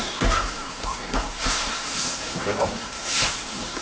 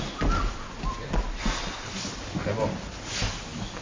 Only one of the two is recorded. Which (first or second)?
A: second